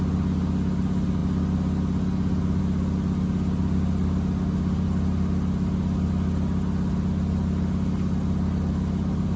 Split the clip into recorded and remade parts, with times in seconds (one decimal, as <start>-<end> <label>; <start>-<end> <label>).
0.0-9.4 recorded